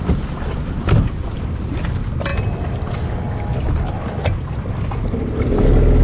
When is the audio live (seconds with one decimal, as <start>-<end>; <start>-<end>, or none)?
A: 0.0-6.0